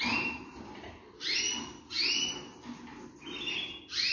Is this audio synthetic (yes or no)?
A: no